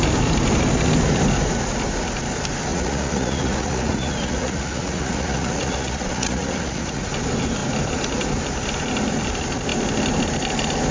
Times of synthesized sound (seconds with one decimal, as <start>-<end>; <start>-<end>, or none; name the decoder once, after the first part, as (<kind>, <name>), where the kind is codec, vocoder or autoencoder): 2.7-7.0 (vocoder, Vocos)